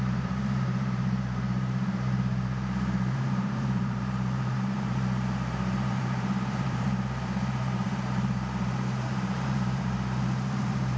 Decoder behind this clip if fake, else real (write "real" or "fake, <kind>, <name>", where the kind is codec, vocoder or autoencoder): fake, vocoder, BigVGAN v2